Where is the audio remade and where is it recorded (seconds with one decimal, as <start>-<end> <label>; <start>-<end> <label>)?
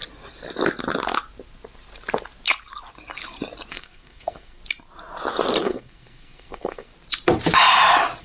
0.0-3.7 recorded; 3.7-4.6 remade; 4.6-5.6 recorded; 5.6-6.9 remade; 6.9-8.2 recorded